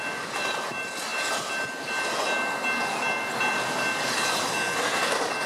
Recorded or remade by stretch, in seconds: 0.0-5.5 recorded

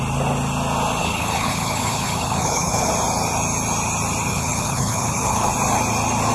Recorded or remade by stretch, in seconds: 0.0-1.0 recorded; 1.0-2.9 remade; 2.9-4.3 recorded; 4.3-5.5 remade; 5.5-6.3 recorded